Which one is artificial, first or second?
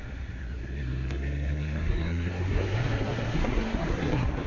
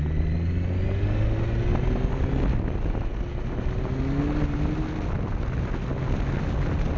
first